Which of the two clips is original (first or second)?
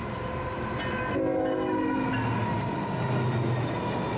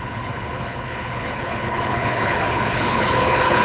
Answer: first